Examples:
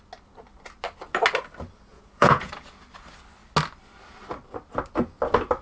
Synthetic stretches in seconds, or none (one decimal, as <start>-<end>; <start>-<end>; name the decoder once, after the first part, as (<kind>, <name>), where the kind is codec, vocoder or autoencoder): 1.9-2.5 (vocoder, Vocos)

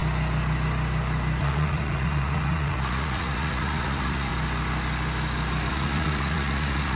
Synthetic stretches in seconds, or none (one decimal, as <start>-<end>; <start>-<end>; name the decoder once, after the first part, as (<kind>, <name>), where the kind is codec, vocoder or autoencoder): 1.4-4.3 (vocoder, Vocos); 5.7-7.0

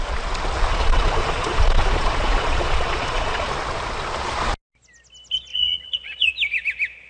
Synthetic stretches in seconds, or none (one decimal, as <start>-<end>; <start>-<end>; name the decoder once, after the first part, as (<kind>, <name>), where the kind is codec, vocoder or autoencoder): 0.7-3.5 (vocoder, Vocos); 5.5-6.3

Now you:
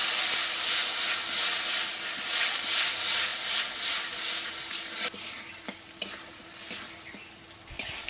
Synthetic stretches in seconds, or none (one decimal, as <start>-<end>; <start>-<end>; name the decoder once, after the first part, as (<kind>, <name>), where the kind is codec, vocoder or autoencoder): none

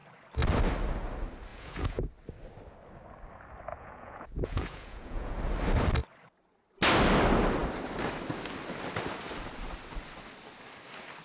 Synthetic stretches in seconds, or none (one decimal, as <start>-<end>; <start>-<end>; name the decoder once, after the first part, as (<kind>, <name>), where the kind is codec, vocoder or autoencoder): 1.5-2.1 (vocoder, Vocos); 3.7-5.3

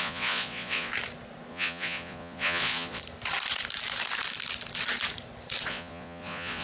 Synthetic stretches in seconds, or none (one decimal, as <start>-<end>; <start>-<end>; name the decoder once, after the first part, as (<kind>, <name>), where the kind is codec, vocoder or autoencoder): 0.0-0.9 (vocoder, Vocos); 1.5-3.0; 5.7-6.6